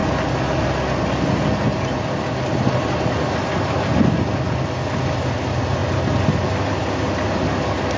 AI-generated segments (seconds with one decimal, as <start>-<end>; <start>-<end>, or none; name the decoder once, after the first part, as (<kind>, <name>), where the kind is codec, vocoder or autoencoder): none